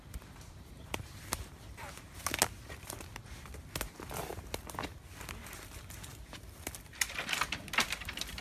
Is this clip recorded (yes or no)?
yes